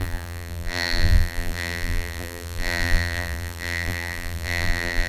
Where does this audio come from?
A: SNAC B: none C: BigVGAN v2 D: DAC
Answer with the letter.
C